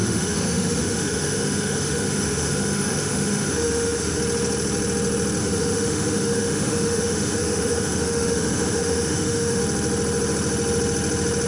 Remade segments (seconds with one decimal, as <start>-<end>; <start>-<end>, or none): 0.0-4.2; 5.4-9.6